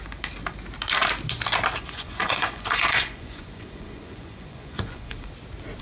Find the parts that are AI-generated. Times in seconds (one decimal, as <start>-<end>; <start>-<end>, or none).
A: 1.8-5.3